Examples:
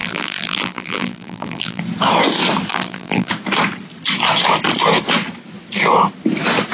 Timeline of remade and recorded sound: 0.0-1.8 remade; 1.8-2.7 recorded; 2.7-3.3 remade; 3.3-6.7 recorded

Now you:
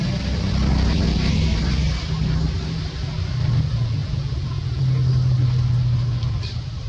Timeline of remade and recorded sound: 0.0-4.0 recorded; 4.0-4.8 remade; 4.8-6.9 recorded

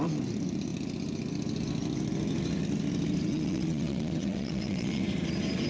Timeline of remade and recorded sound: 0.0-3.3 recorded; 3.3-5.0 remade; 5.0-5.7 recorded

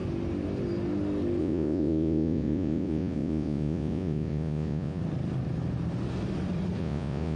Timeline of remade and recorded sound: 0.0-1.4 recorded; 1.4-5.0 remade; 5.0-6.8 recorded; 6.8-7.4 remade

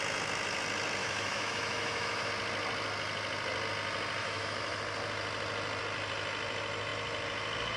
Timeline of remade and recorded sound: 0.0-1.0 recorded; 1.0-2.3 remade; 2.3-4.2 recorded; 4.2-4.8 remade; 4.8-7.8 recorded

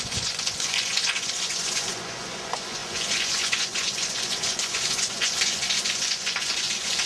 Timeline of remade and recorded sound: 0.0-7.1 remade

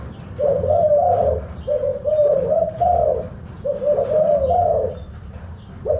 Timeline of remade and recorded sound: 0.0-6.0 recorded

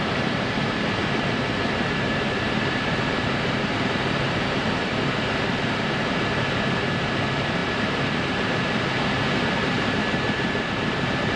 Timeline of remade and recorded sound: 0.0-11.4 remade